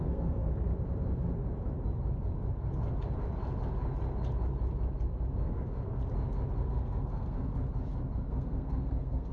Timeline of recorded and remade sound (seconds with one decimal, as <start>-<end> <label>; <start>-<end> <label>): 0.0-0.4 remade; 0.4-5.4 recorded; 5.4-6.0 remade; 6.0-6.6 recorded; 6.6-7.5 remade; 7.5-8.3 recorded; 8.3-9.3 remade